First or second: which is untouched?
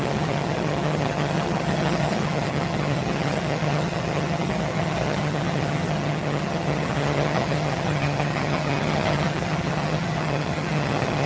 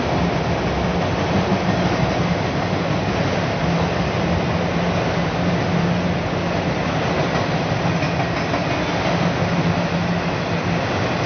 second